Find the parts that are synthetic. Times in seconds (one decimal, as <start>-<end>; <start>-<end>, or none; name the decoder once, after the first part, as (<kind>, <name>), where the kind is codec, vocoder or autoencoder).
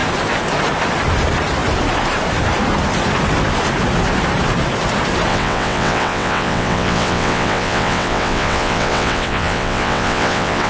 5.3-10.7 (vocoder, WaveNeXt)